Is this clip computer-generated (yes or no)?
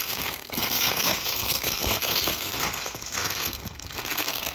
yes